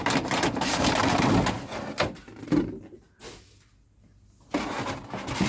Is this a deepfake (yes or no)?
no